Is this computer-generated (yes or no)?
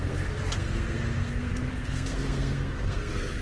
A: yes